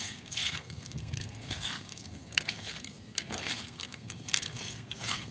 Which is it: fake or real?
fake